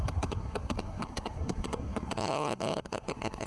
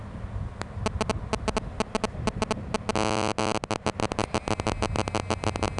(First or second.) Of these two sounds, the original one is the second